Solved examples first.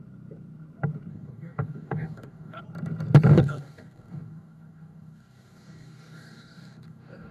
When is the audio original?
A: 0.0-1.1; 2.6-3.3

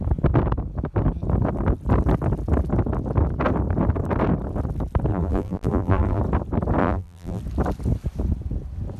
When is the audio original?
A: 0.0-5.1; 6.2-6.8; 7.4-9.0

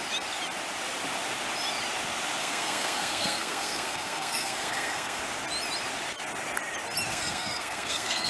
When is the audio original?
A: 0.0-2.4; 5.2-7.1